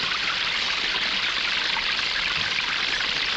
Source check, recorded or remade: recorded